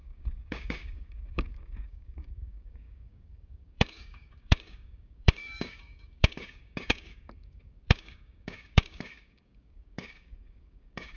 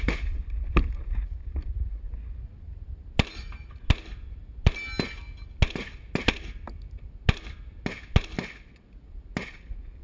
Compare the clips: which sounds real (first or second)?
second